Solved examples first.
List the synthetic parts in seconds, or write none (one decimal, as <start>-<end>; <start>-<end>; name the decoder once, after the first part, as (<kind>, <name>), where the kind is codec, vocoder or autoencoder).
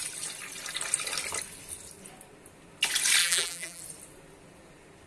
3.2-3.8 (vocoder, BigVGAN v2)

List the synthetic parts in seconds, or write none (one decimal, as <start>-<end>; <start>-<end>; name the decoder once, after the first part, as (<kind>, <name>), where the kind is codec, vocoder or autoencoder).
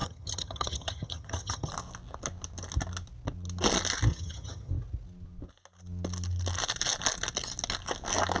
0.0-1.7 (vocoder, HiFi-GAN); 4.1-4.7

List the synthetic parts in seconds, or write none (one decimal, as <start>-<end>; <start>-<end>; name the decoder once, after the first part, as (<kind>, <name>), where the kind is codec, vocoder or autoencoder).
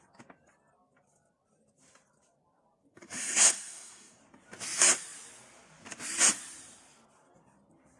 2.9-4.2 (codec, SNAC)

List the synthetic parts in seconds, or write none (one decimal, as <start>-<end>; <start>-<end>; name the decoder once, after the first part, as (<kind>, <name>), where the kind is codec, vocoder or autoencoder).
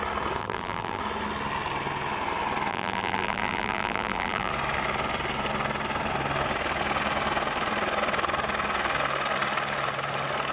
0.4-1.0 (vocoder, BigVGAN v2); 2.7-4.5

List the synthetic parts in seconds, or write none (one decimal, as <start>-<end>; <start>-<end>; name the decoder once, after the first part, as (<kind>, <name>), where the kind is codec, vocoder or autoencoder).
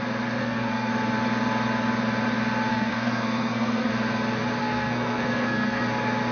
0.4-0.9 (codec, SNAC); 2.7-3.9; 4.6-5.8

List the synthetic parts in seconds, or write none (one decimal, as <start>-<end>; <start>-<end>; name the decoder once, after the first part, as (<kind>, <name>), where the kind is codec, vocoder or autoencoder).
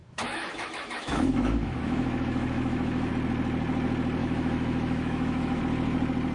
0.0-3.1 (autoencoder, DAC-VAE); 4.2-5.6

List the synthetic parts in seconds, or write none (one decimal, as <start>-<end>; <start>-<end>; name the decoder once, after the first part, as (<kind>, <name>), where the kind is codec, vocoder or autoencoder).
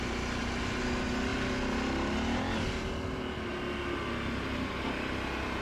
none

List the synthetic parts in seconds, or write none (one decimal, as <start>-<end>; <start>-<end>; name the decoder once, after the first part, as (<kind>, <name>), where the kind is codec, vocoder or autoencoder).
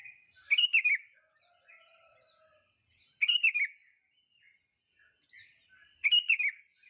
none